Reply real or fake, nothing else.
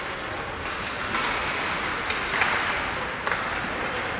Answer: real